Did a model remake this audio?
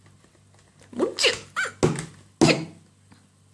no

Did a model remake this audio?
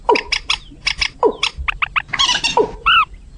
no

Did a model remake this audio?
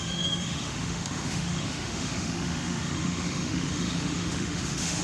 yes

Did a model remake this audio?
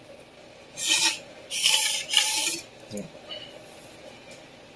no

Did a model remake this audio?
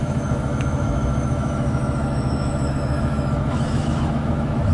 yes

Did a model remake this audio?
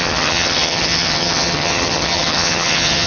yes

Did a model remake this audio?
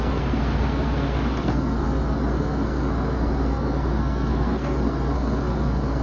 yes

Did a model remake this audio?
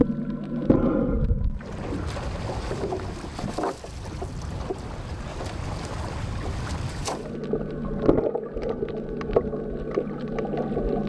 no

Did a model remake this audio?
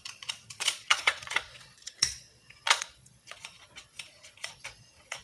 yes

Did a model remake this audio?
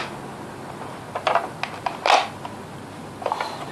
no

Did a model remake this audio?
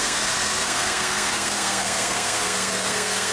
yes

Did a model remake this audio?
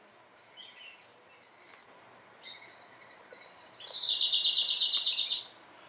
yes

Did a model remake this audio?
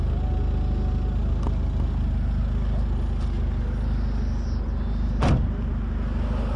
no